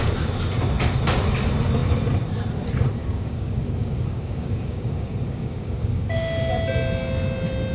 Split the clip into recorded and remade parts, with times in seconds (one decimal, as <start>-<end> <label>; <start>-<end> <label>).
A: 0.0-3.0 recorded; 3.0-6.5 remade; 6.5-7.7 recorded